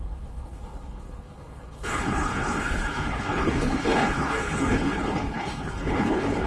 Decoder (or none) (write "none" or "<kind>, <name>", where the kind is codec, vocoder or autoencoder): codec, HILCodec